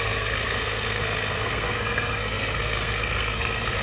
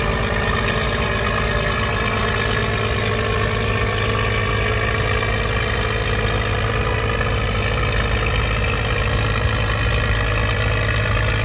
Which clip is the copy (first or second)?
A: first